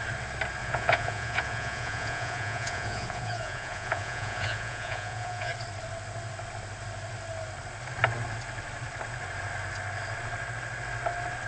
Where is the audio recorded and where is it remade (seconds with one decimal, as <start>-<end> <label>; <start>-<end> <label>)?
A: 0.0-0.6 recorded; 0.6-5.5 remade; 5.5-11.5 recorded